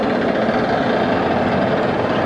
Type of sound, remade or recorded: recorded